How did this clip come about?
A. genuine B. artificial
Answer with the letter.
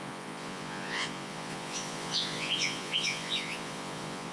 B